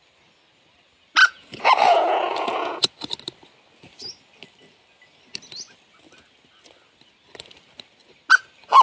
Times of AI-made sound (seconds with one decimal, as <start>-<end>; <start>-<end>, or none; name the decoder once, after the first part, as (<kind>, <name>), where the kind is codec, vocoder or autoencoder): 1.2-2.9 (vocoder, Vocos)